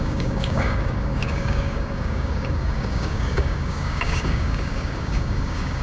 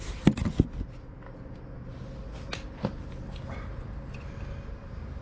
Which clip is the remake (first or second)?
first